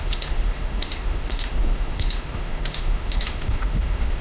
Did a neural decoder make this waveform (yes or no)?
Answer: yes